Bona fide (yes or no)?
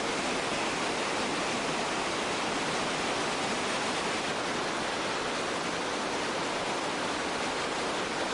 yes